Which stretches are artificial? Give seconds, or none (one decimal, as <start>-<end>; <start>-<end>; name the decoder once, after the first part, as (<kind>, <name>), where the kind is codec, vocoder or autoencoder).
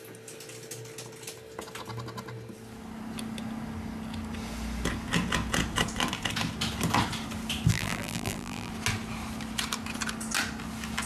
7.7-8.7 (vocoder, BigVGAN v2)